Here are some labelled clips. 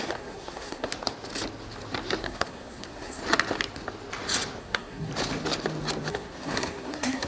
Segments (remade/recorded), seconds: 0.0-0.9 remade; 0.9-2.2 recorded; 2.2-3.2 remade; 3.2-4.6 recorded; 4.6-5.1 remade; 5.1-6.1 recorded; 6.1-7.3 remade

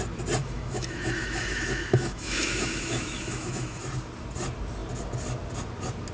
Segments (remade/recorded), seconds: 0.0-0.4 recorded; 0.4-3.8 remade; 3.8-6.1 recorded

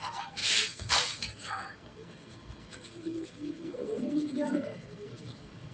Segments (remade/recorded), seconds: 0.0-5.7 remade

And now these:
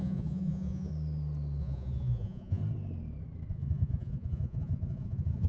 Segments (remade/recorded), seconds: 0.0-0.9 remade; 0.9-1.6 recorded; 1.6-2.6 remade; 2.6-3.5 recorded; 3.5-5.5 remade

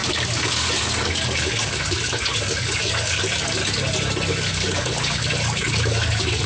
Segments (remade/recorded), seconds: 0.0-3.6 remade; 3.6-4.3 recorded; 4.3-6.5 remade

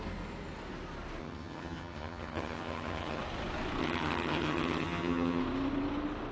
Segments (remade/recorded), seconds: 0.0-1.2 recorded; 1.2-3.2 remade; 3.2-3.8 recorded; 3.8-5.4 remade; 5.4-6.3 recorded

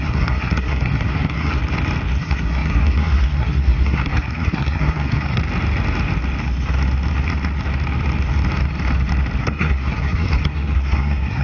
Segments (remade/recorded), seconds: 0.0-1.6 remade; 1.6-2.2 recorded; 2.2-5.4 remade; 5.4-9.4 recorded; 9.4-11.4 remade